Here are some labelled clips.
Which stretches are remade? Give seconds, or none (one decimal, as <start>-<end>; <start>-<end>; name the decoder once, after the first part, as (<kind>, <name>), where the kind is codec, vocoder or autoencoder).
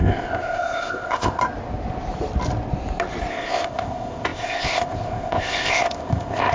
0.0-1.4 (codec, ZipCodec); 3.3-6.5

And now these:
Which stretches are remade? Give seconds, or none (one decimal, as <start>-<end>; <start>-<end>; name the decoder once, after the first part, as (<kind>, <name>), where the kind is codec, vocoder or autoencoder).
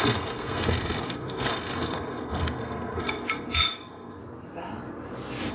0.0-4.2 (codec, SNAC)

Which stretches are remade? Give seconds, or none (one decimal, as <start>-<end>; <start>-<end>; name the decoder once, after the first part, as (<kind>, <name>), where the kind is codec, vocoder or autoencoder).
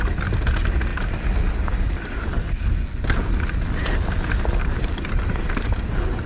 none